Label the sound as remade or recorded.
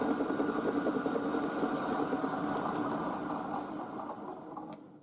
recorded